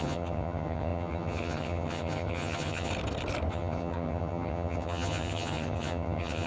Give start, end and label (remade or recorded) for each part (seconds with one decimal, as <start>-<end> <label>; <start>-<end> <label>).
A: 0.0-2.9 remade; 2.9-3.5 recorded; 3.5-6.5 remade